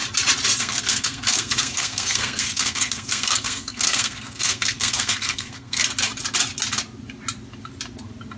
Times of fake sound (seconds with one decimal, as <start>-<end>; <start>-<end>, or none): 0.6-5.8